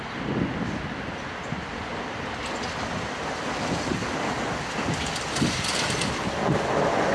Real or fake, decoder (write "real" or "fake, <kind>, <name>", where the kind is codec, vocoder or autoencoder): real